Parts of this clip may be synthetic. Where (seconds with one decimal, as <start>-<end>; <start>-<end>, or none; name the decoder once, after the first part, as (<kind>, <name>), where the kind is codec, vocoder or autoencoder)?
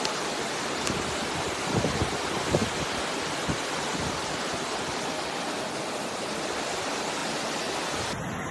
0.0-2.6 (vocoder, BigVGAN v2); 3.5-8.5